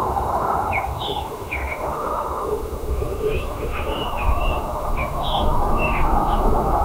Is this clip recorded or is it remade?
remade